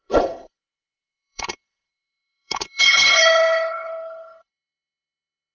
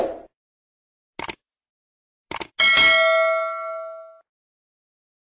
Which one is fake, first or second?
first